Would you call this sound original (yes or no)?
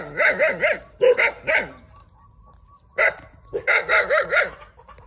yes